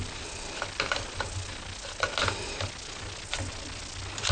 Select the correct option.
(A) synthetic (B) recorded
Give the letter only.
B